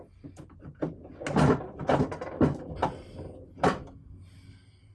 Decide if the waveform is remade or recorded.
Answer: recorded